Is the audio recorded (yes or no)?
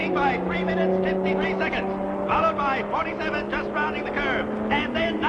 yes